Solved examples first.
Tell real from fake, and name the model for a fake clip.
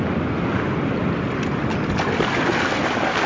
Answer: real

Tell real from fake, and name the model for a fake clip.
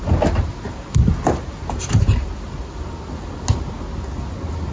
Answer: real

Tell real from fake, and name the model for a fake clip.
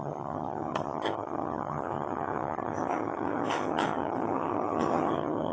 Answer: fake, vocoder, HiFi-GAN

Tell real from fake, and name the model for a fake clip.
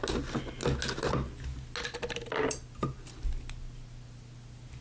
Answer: real